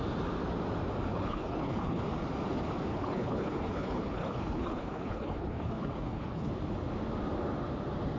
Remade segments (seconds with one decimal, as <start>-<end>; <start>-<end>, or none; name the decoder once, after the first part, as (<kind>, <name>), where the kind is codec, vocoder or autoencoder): 1.1-2.0 (codec, HILCodec); 2.9-6.5